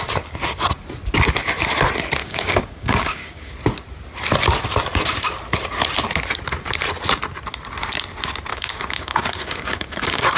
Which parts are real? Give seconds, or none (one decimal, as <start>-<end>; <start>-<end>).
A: 0.0-2.2; 3.5-8.5